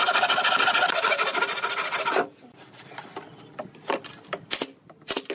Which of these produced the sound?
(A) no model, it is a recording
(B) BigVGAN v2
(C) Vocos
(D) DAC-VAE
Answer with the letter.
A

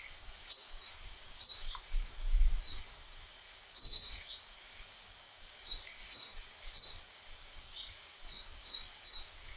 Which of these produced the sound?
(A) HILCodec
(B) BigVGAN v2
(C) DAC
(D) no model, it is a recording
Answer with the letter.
C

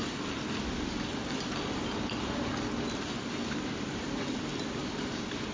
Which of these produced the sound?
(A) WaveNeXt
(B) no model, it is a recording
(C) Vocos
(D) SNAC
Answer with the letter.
B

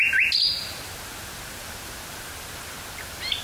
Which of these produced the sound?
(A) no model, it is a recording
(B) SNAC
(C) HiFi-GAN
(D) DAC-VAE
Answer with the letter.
A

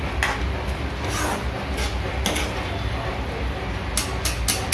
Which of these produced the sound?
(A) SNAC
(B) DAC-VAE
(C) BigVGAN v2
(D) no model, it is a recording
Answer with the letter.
D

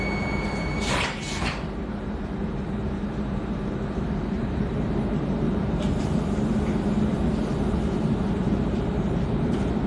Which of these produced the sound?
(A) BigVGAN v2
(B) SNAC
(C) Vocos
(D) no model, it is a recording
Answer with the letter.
A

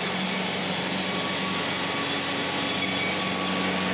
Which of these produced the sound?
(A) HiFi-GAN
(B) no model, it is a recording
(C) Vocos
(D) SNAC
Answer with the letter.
B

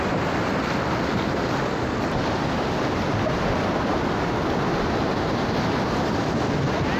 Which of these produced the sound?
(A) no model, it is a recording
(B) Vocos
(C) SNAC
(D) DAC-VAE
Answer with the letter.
A